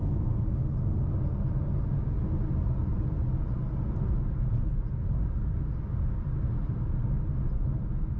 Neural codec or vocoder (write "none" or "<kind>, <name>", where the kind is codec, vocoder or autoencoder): none